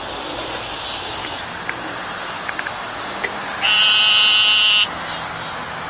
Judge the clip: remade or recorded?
recorded